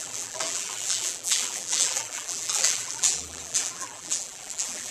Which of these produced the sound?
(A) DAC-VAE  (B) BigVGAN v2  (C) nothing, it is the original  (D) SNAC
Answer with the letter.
B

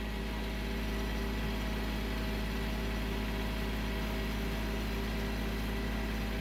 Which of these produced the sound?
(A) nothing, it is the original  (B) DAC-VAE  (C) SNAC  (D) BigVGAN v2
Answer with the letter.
A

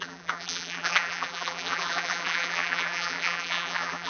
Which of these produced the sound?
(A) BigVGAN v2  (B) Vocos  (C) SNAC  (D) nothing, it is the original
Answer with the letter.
A